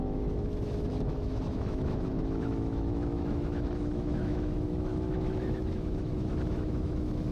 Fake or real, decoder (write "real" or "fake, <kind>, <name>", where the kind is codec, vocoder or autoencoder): fake, autoencoder, DAC-VAE